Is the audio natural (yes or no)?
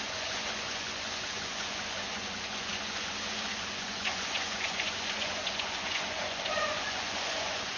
no